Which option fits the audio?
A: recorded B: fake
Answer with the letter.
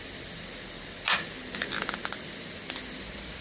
A